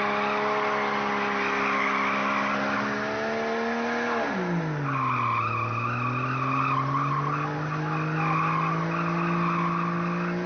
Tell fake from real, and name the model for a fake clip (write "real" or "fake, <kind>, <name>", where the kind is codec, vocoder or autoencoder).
real